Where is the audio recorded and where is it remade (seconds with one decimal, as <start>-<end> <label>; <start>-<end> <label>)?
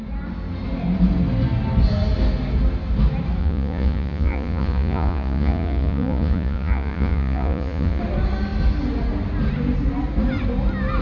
0.0-3.4 recorded; 3.4-8.0 remade; 8.0-11.0 recorded